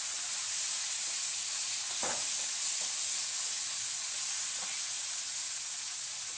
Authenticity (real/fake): fake